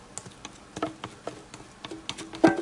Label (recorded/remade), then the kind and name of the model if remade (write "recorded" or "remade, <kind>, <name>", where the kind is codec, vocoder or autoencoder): recorded